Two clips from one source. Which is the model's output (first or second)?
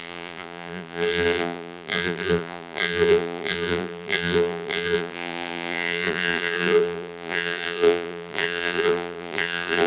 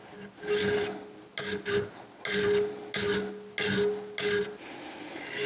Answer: first